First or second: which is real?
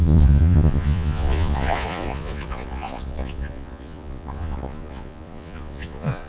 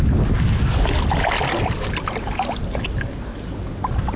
second